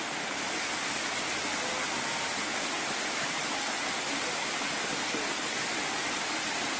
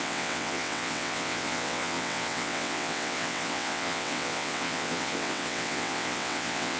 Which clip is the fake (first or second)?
second